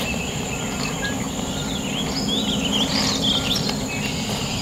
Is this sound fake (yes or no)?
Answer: no